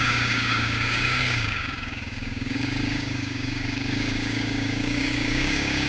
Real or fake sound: fake